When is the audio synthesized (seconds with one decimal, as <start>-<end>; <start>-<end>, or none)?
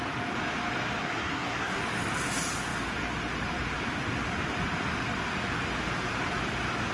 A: 1.0-1.8